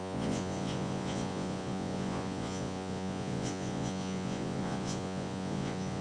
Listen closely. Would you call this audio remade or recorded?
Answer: remade